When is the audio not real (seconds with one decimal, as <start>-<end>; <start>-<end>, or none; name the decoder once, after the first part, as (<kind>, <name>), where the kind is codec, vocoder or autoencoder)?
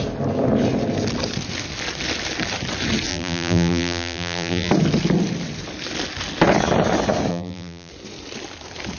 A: 3.1-4.7 (vocoder, BigVGAN v2); 7.3-7.9